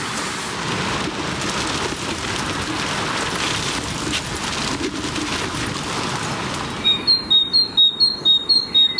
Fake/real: real